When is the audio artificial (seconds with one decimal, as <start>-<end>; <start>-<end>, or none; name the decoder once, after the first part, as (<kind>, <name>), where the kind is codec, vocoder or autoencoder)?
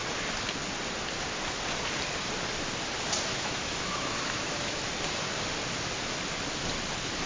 3.3-4.8 (autoencoder, DAC-VAE)